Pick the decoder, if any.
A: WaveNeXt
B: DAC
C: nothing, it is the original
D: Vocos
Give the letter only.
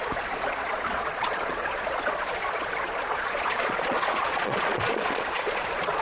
D